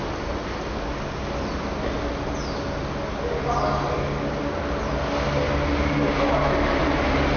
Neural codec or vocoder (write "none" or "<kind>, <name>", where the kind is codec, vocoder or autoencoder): none